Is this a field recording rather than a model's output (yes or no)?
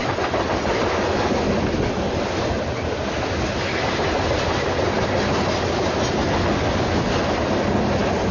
yes